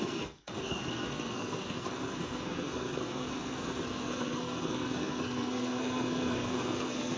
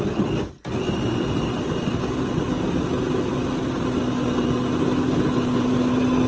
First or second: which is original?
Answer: second